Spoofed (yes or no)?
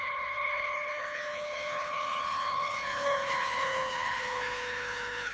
yes